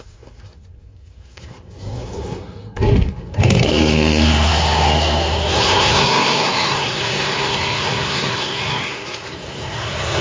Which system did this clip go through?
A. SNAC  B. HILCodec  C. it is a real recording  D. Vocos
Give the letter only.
A